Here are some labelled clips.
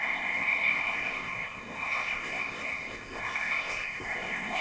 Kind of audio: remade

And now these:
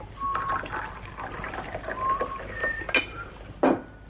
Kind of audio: recorded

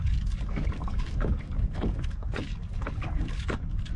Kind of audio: remade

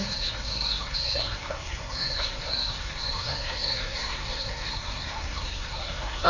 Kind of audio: remade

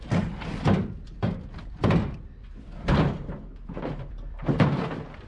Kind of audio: remade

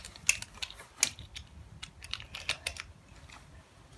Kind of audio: recorded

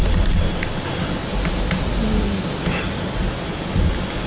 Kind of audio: recorded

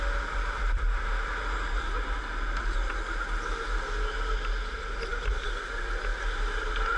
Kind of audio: recorded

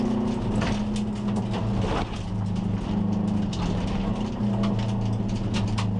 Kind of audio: recorded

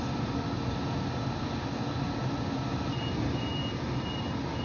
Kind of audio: recorded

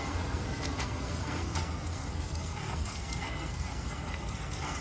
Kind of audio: remade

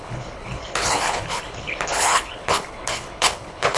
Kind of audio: remade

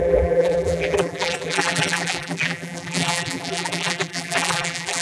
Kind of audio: remade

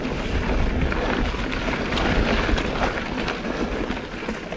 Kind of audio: recorded